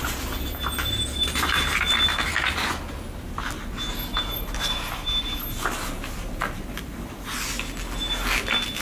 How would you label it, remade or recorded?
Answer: recorded